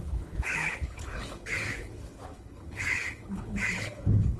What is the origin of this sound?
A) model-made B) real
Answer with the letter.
A